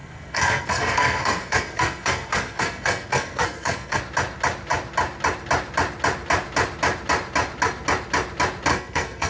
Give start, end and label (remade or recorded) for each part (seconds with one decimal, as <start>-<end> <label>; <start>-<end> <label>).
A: 0.0-4.0 remade; 4.0-8.7 recorded; 8.7-9.3 remade